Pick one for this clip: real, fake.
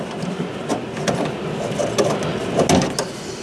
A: real